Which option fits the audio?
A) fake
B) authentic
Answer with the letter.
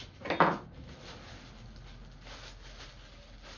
B